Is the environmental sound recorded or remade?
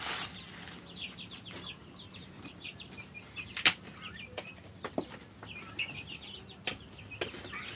recorded